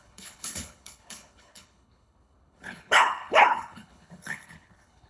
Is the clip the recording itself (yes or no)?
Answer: no